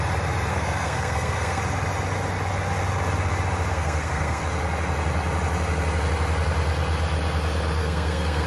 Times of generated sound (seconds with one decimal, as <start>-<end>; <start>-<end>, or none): 0.5-1.6; 3.7-4.4; 7.8-8.5